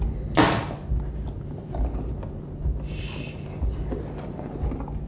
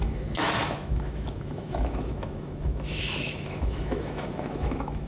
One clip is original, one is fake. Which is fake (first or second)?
second